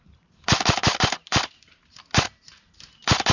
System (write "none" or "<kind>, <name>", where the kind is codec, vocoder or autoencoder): vocoder, BigVGAN v2